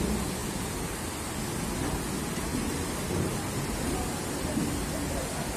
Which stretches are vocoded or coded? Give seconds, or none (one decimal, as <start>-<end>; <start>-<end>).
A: none